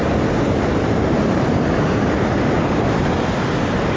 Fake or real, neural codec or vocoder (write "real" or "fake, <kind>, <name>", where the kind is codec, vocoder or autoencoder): real